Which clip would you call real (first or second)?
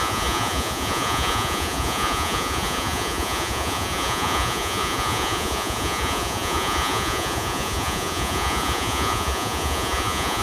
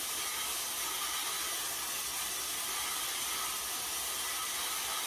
second